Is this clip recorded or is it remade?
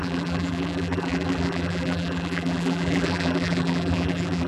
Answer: remade